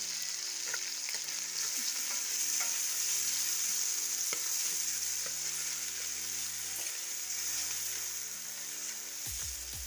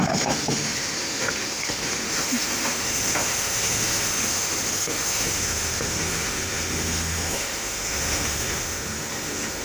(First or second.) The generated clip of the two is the second